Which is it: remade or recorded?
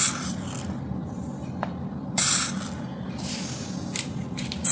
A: recorded